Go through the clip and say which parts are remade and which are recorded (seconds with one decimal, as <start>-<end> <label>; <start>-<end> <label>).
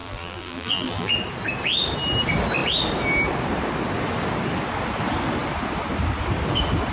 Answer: 0.0-1.1 remade; 1.1-6.9 recorded